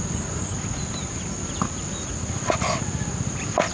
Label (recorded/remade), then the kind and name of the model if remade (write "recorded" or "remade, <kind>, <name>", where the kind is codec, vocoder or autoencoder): recorded